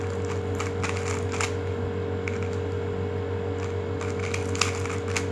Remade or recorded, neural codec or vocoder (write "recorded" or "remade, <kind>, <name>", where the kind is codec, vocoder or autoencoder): recorded